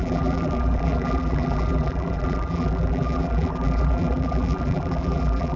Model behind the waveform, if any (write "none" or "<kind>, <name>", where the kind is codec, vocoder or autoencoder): vocoder, BigVGAN v2